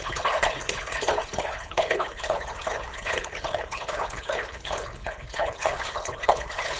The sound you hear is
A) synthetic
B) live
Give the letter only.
A